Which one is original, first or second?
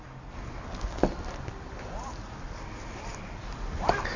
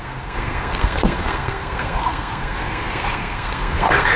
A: first